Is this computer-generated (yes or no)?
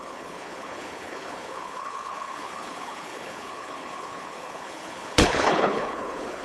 yes